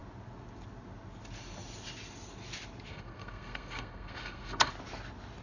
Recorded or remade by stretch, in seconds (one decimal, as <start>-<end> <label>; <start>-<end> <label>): 0.0-2.9 recorded; 2.9-4.7 remade; 4.7-5.4 recorded